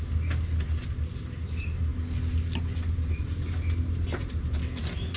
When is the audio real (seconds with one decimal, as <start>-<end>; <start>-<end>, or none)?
0.0-5.2